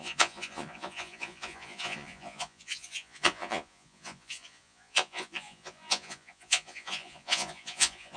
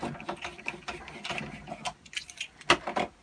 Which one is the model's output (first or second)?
first